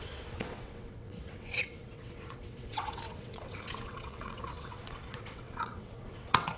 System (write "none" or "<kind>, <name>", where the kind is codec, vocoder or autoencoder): vocoder, WaveNeXt